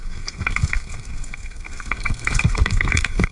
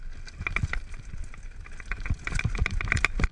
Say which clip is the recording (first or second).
second